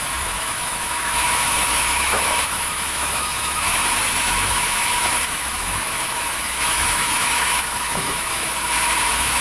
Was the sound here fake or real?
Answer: fake